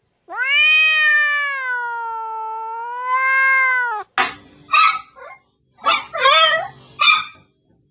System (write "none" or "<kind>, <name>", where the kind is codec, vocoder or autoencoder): none